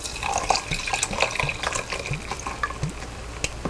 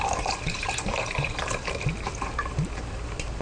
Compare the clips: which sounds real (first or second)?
first